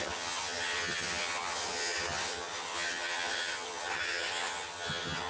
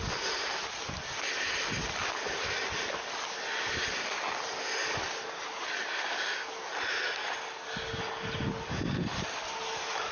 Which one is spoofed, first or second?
first